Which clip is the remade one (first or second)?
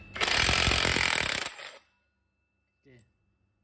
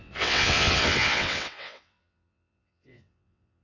second